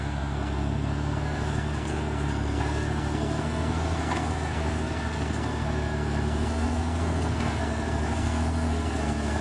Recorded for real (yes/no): no